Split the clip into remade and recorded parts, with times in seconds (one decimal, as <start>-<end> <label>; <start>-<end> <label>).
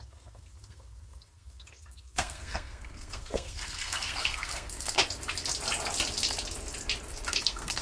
0.0-5.0 remade; 5.0-7.3 recorded; 7.3-7.8 remade